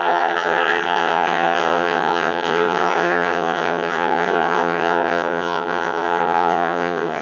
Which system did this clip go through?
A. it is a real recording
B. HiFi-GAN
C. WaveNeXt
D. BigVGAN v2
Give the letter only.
B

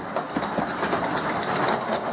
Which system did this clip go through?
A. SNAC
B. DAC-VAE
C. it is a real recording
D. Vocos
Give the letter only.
C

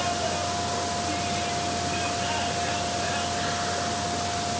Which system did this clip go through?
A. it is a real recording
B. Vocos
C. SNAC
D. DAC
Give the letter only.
A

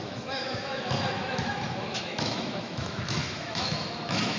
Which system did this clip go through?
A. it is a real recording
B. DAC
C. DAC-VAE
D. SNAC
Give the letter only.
C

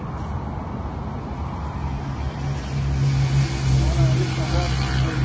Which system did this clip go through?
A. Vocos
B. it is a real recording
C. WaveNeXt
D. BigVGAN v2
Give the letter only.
B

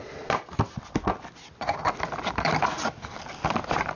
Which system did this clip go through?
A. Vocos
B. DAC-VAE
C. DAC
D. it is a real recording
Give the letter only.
D